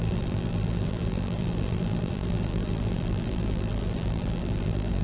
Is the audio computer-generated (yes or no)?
yes